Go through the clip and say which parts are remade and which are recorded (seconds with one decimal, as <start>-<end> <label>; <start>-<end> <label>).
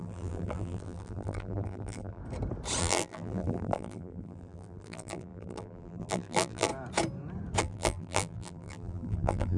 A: 0.0-2.2 remade; 2.2-2.8 recorded; 2.8-6.7 remade; 6.7-7.6 recorded; 7.6-9.6 remade